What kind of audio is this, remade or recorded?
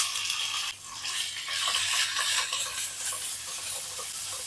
recorded